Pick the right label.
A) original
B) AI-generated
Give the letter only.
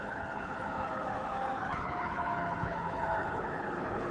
B